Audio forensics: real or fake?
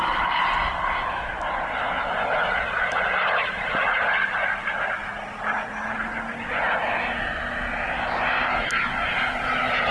real